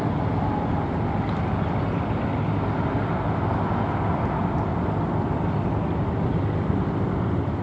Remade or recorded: recorded